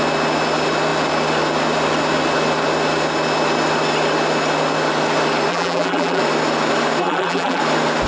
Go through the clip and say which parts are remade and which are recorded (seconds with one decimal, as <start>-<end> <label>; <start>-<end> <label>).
0.0-5.5 recorded; 5.5-6.2 remade; 6.2-7.0 recorded; 7.0-7.6 remade; 7.6-8.1 recorded